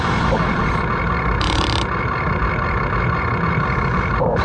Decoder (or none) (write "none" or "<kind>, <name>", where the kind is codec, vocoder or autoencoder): vocoder, BigVGAN v2